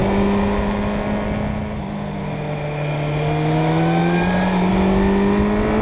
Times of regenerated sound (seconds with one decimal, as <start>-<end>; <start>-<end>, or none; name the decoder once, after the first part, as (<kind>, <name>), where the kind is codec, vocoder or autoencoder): 4.0-4.7 (vocoder, BigVGAN v2)